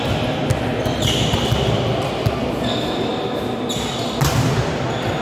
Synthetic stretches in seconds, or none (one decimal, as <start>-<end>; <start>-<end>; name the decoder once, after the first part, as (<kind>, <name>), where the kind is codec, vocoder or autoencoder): none